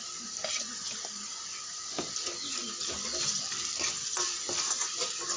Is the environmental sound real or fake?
fake